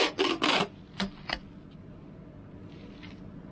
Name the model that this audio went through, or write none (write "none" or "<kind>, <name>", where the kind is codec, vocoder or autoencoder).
none